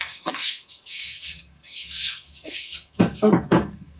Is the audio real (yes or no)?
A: no